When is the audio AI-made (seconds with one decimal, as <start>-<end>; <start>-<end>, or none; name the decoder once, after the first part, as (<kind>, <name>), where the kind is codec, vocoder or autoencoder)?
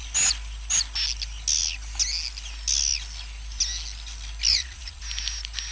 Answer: 4.5-5.0 (vocoder, Vocos)